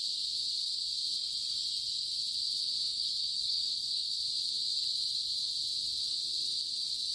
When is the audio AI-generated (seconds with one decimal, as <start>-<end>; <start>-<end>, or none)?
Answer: 2.9-4.2